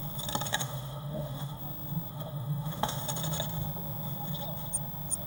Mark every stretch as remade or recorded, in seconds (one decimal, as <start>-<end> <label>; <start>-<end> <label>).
0.0-0.5 recorded; 0.5-1.6 remade; 1.6-2.1 recorded; 2.1-3.0 remade; 3.0-5.3 recorded